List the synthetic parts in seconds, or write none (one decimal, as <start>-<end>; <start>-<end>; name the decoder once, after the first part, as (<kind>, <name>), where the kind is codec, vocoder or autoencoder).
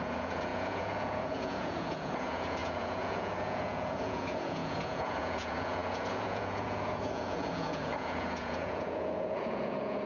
0.0-10.1 (vocoder, Vocos)